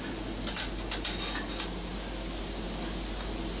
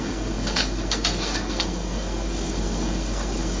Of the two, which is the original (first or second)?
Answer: first